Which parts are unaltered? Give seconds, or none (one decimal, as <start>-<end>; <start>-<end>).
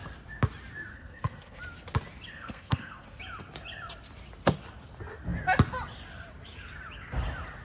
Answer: 0.0-0.9; 1.6-2.3; 3.2-7.6